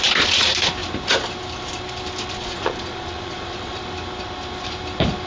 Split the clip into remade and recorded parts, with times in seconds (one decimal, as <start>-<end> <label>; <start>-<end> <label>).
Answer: 0.0-2.4 recorded; 2.4-3.8 remade; 3.8-5.3 recorded